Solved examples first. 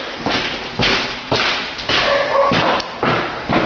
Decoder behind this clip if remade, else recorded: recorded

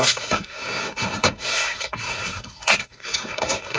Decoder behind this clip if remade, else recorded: remade, codec, SNAC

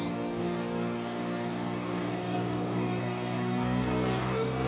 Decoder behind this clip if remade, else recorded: remade, codec, DAC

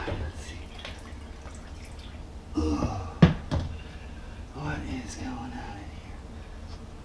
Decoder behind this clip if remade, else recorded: recorded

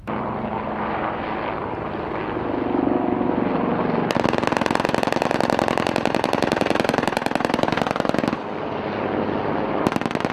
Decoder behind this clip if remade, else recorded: recorded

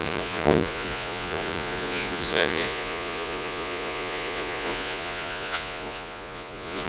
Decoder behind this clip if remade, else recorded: remade, vocoder, Vocos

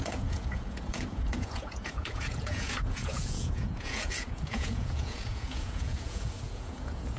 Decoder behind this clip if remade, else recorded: remade, vocoder, Vocos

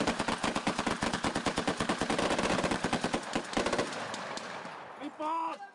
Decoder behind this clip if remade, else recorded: recorded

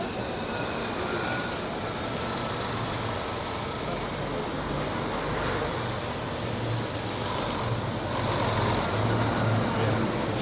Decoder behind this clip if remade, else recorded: recorded